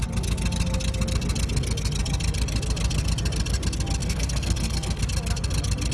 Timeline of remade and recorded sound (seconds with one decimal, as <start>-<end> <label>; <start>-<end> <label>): 0.0-4.0 recorded; 4.0-5.0 remade; 5.0-5.9 recorded